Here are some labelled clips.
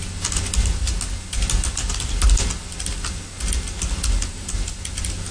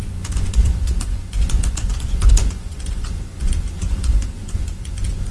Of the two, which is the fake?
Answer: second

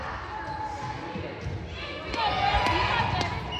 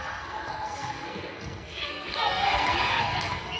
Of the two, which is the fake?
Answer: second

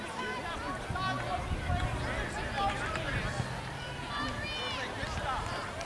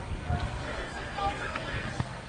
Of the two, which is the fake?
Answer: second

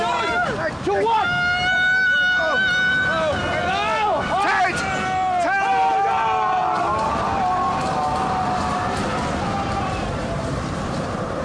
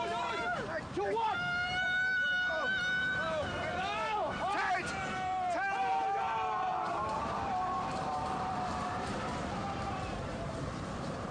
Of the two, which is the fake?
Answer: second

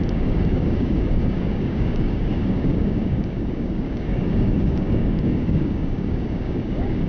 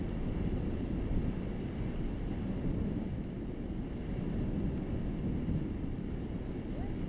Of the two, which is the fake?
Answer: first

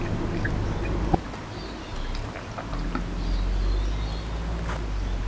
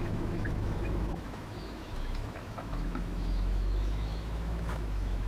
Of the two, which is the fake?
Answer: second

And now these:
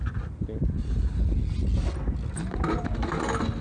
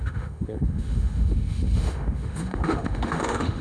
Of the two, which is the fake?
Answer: second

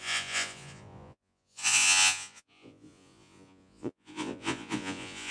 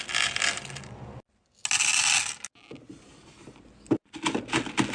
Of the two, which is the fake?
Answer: first